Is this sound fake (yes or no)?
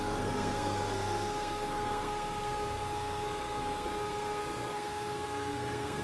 yes